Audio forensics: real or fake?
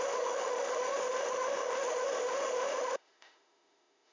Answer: fake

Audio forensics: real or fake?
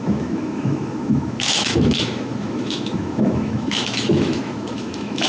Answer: fake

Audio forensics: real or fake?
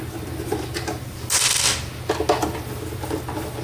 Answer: real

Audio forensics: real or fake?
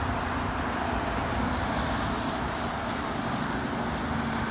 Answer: real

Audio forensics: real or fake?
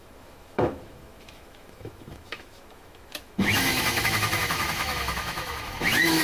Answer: fake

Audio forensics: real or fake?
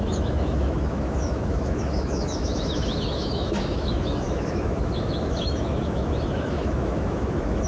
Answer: fake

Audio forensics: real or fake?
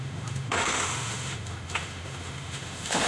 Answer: fake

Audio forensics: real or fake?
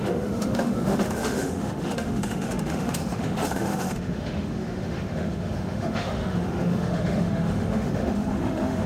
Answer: fake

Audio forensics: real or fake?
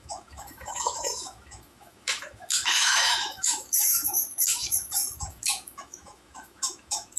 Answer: fake